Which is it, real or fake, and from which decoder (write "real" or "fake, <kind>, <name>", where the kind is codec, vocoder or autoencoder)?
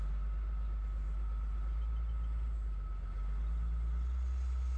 real